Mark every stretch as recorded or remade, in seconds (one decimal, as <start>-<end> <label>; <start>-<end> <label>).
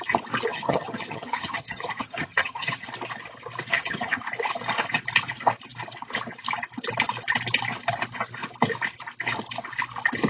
0.0-0.5 recorded; 0.5-2.9 remade; 2.9-3.7 recorded; 3.7-4.2 remade; 4.2-10.3 recorded